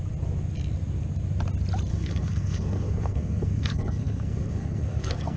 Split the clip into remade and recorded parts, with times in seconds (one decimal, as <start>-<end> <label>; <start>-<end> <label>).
0.0-1.9 recorded; 1.9-5.4 remade